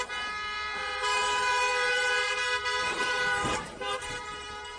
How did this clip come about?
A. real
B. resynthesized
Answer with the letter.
B